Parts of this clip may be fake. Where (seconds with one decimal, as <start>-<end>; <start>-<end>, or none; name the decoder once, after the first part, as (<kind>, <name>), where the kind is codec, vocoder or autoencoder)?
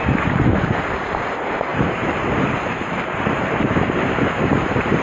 1.7-5.0 (vocoder, BigVGAN v2)